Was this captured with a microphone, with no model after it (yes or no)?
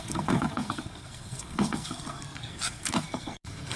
no